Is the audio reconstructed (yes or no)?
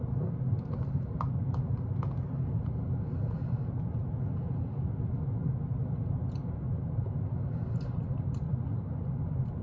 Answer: no